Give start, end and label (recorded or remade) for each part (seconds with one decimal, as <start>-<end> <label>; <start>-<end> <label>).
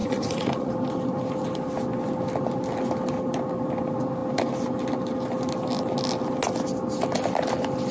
0.0-0.7 remade; 0.7-7.9 recorded